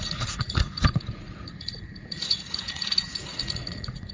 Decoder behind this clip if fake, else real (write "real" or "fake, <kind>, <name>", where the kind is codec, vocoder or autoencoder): fake, vocoder, Vocos